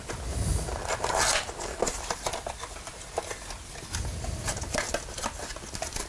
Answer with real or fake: real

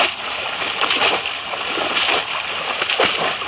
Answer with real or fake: real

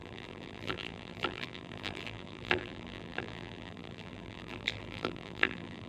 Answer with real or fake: fake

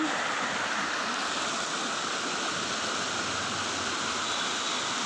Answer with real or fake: real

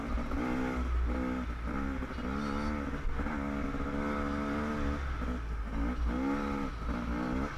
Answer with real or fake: real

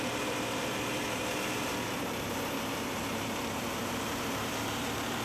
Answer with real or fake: fake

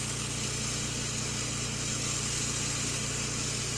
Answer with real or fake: real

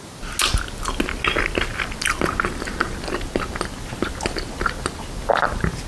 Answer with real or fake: real